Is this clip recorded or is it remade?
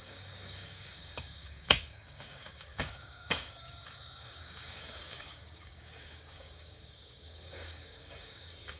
remade